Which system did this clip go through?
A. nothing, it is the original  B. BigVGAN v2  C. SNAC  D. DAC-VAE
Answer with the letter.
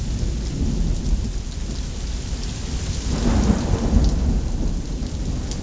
A